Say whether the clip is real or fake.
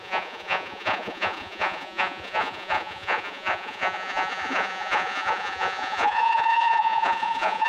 fake